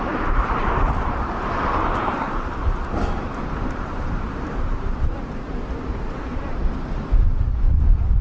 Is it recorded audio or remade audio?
remade